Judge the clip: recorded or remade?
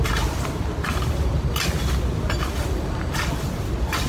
recorded